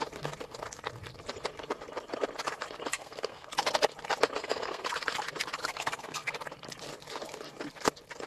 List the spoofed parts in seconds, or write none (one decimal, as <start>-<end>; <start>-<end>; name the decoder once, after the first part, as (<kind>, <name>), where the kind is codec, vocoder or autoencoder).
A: 2.9-3.5 (codec, SNAC); 4.4-4.9; 5.6-6.3